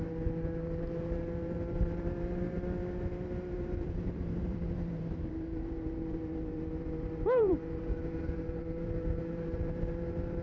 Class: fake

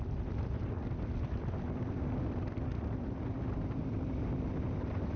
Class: fake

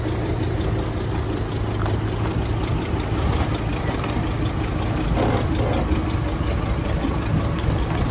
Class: real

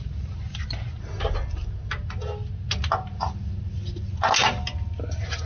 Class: real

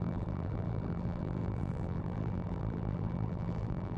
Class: fake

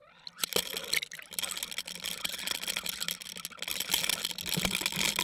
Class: real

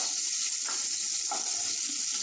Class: real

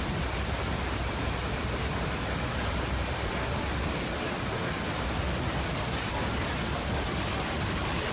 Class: real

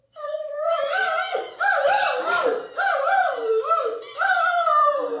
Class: fake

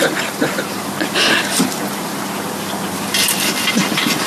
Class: fake